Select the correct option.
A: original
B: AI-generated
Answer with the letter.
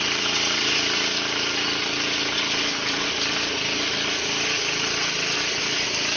A